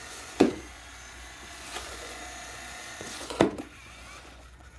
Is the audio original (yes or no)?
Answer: no